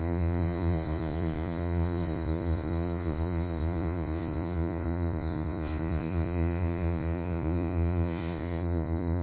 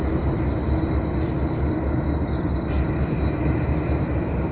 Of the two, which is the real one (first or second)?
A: second